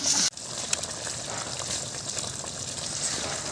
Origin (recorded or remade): recorded